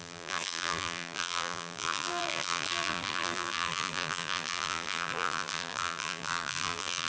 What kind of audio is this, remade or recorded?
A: remade